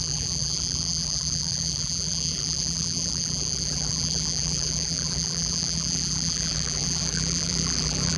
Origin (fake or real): fake